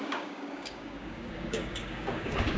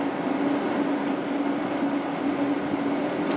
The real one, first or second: second